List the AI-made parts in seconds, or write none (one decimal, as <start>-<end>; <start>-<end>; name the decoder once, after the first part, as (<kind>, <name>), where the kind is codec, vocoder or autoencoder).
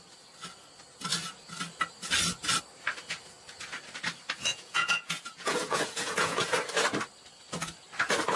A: 4.5-6.4 (vocoder, Vocos)